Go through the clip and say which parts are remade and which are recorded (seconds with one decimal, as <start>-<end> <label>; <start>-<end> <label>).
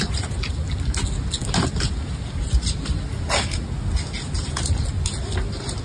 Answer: 0.0-5.8 recorded